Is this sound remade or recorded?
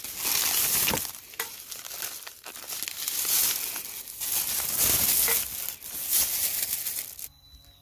recorded